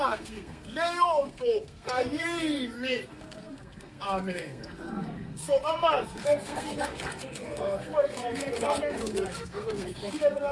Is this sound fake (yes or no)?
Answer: yes